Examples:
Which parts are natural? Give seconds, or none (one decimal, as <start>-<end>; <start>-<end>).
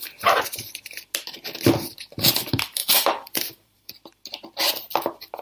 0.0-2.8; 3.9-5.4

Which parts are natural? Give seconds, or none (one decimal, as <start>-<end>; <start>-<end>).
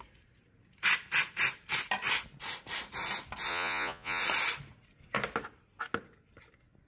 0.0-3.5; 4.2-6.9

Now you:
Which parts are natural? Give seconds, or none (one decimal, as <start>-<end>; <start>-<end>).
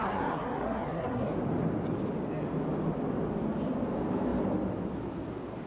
1.3-5.7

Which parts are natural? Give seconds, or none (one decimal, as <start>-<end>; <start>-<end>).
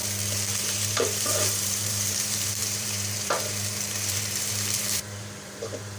0.0-0.6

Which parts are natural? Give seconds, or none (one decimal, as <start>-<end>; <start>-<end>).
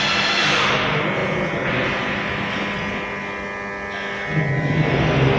0.0-5.4